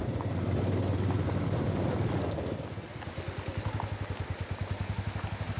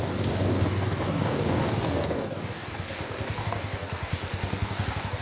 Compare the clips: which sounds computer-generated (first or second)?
second